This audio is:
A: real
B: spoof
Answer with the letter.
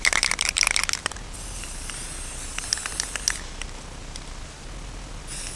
A